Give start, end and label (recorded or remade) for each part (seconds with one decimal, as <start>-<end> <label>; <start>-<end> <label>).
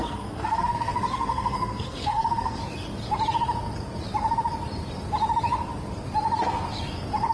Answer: 0.0-2.6 remade; 2.6-7.3 recorded